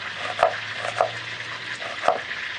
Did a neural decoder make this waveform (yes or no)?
no